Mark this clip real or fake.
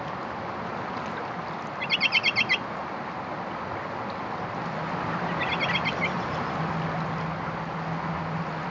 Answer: real